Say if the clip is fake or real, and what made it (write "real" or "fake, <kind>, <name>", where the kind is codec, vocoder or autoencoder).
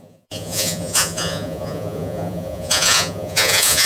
fake, vocoder, Vocos